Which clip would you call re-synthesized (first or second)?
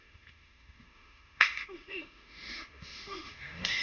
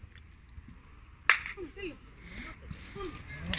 first